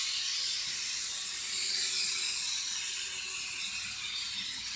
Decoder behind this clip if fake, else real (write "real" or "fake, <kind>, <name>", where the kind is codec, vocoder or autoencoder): real